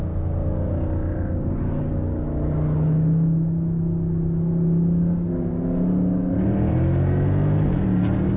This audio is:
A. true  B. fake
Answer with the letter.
A